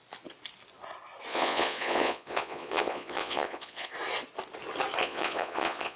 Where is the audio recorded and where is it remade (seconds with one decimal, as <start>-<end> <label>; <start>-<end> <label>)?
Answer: 0.0-1.3 recorded; 1.3-3.9 remade; 3.9-5.0 recorded; 5.0-6.0 remade